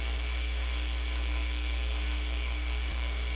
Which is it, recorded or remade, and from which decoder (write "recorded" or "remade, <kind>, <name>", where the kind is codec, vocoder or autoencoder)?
remade, codec, SNAC